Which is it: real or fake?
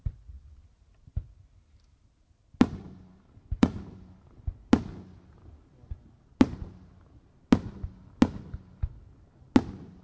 real